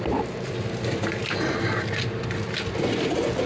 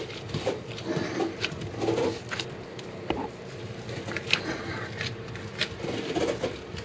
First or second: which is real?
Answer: first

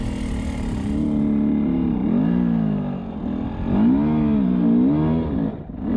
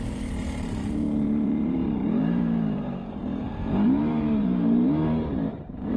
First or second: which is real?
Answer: first